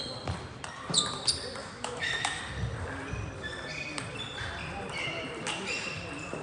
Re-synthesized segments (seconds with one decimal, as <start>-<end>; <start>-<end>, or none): 1.6-2.4